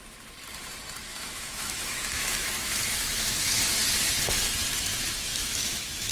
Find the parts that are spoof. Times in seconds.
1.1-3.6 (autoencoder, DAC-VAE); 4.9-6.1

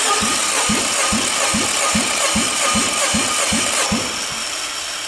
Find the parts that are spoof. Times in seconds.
none

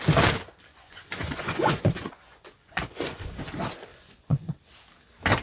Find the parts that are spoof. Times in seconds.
0.7-3.4 (vocoder, Vocos); 3.9-4.5

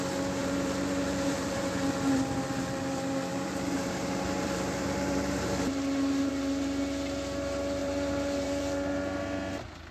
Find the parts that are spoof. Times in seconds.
0.4-1.6 (vocoder, BigVGAN v2); 3.3-6.3; 7.8-9.2

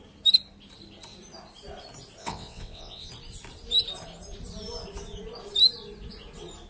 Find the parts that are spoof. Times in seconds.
2.2-3.1 (vocoder, WaveNeXt)